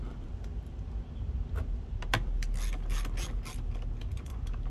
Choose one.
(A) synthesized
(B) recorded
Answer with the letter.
B